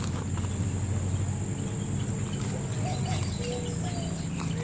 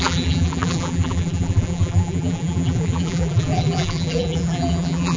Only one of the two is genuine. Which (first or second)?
first